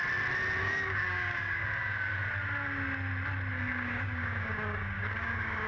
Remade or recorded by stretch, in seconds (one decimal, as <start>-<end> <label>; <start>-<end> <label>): 0.0-0.6 recorded; 0.6-2.1 remade; 2.1-3.5 recorded; 3.5-5.7 remade